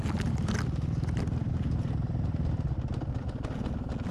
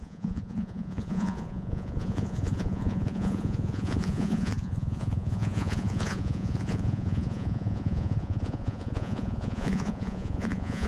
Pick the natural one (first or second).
first